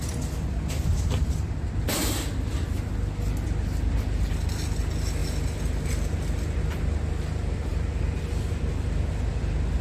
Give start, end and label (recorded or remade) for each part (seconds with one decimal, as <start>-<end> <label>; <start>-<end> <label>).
0.0-9.8 recorded